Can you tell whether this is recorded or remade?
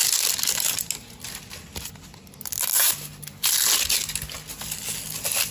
recorded